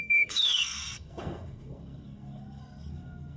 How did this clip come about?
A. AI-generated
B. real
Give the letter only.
A